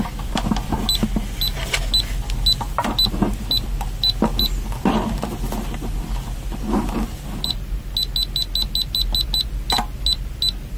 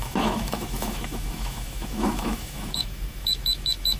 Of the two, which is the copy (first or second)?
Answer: second